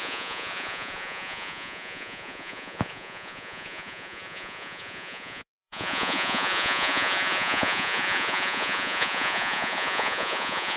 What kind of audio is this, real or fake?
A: fake